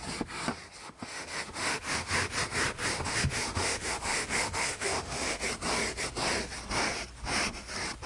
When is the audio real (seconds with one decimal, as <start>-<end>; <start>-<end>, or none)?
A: 0.0-0.8; 2.3-2.9; 5.4-8.1